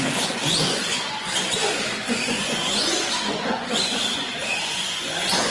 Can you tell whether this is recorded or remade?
remade